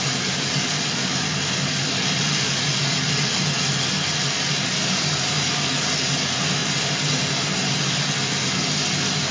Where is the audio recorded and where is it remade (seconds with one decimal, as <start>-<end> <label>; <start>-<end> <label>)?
0.0-9.3 recorded